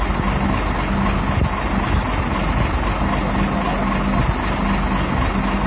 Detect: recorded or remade recorded